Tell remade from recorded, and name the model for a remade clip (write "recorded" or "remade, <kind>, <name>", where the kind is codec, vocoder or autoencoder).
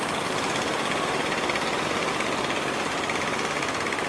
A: recorded